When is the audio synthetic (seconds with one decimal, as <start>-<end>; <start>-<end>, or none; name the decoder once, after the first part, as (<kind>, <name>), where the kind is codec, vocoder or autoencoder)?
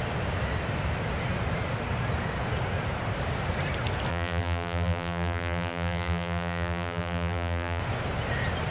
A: 4.1-7.8 (vocoder, BigVGAN v2)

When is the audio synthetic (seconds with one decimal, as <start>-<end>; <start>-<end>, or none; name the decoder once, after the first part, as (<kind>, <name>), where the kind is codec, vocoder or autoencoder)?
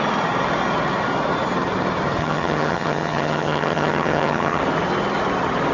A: 2.2-4.6 (vocoder, HiFi-GAN)